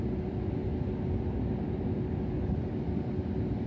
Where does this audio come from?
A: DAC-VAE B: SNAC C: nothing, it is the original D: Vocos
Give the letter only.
C